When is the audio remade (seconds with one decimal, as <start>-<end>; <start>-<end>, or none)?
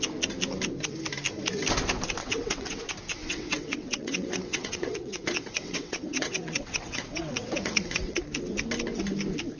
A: 2.2-2.8; 3.2-8.2